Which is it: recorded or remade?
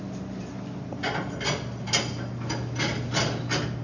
recorded